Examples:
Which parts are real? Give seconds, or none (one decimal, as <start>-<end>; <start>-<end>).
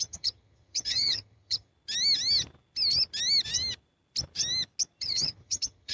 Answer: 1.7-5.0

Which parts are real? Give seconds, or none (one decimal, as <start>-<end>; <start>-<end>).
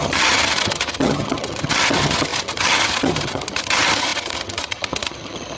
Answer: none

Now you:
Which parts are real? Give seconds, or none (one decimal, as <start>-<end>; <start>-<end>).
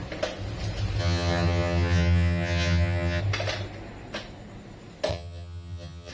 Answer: 0.0-1.0; 3.2-5.1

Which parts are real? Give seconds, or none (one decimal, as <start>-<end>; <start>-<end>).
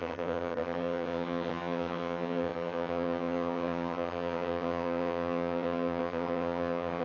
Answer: none